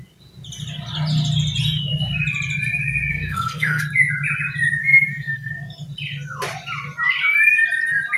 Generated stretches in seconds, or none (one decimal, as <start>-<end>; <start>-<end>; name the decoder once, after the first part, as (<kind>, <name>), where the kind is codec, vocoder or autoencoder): 3.1-3.8 (codec, SNAC); 4.8-5.5